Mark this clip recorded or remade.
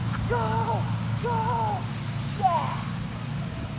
recorded